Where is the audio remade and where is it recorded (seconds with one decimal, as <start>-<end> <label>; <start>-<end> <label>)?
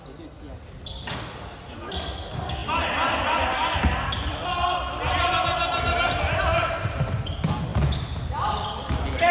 0.0-9.3 recorded